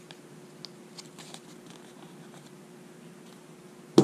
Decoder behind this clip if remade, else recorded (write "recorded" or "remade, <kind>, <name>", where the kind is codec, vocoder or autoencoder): recorded